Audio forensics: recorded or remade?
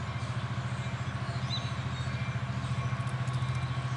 recorded